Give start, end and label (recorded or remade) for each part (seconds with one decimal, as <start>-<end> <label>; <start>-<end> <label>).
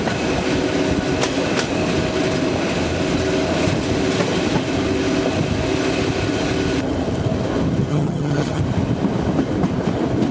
0.0-7.9 recorded; 7.9-8.6 remade; 8.6-10.3 recorded